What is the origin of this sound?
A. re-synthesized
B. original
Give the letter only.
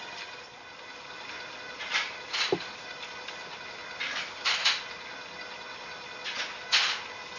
B